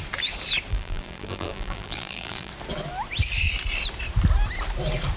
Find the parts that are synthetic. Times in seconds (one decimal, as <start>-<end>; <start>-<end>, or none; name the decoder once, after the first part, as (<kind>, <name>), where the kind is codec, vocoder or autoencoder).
0.7-2.5 (vocoder, BigVGAN v2)